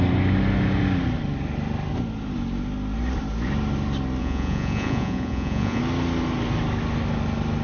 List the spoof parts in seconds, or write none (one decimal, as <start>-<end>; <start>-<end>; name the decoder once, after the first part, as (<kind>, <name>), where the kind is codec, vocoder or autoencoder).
4.2-5.8 (vocoder, Vocos)